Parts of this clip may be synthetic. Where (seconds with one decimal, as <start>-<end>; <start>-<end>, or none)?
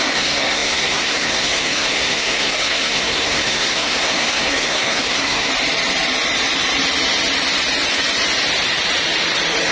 0.0-5.5